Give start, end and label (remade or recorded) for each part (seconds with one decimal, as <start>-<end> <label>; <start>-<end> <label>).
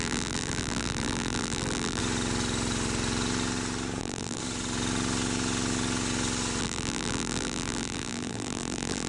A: 0.0-2.0 remade; 2.0-4.0 recorded; 4.0-4.4 remade; 4.4-6.6 recorded; 6.6-9.1 remade